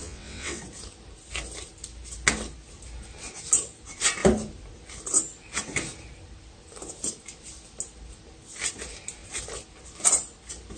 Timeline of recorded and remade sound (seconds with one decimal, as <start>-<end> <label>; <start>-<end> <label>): 0.0-0.6 remade; 0.6-10.8 recorded